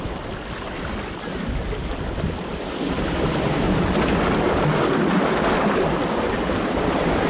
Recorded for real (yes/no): yes